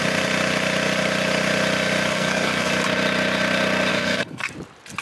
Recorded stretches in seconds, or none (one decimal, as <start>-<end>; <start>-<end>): 0.0-2.1; 2.7-3.9; 4.5-5.0